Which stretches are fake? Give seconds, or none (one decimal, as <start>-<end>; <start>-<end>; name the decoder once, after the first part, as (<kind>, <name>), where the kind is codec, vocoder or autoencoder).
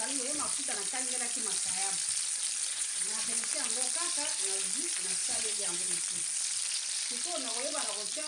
2.7-3.5 (vocoder, Vocos); 5.2-6.0